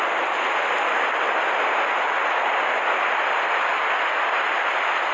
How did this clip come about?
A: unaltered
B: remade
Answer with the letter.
A